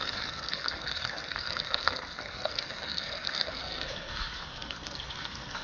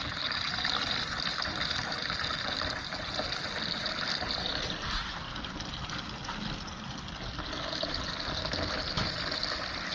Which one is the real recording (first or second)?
second